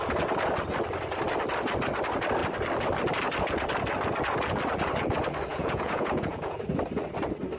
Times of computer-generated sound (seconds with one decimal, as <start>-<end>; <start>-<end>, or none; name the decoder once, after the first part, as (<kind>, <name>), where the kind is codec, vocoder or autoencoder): 5.5-6.6 (vocoder, Vocos)

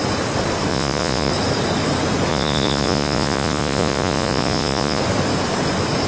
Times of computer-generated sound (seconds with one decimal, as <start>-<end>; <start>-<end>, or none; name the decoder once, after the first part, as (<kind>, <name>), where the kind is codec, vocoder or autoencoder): 0.7-1.3 (vocoder, Vocos); 2.3-5.0